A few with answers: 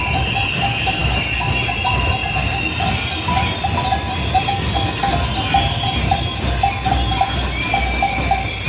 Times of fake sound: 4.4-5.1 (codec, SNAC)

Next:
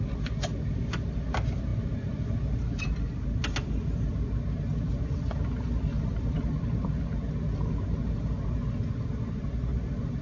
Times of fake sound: none

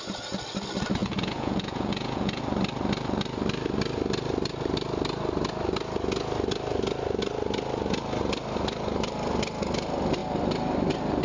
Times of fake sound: 1.0-2.4 (vocoder, Vocos)

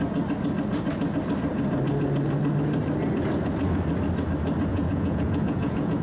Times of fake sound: 4.7-6.0 (vocoder, Vocos)

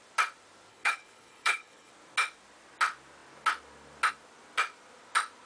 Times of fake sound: 0.7-1.9 (codec, HILCodec)

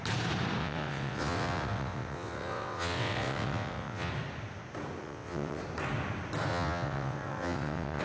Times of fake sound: 0.6-4.1 (vocoder, WaveNeXt); 5.0-5.6; 6.5-8.0

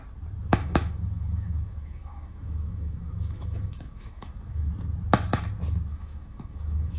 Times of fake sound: 0.5-4.7 (autoencoder, DAC-VAE); 5.9-7.0

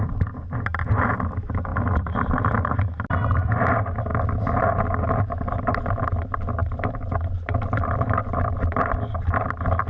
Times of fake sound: 1.7-2.5 (vocoder, BigVGAN v2); 6.6-8.0